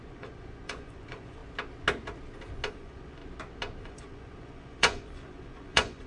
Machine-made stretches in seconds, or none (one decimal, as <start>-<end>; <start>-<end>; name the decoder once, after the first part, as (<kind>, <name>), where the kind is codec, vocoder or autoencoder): 0.0-1.4 (vocoder, Vocos); 2.7-3.2; 3.8-6.1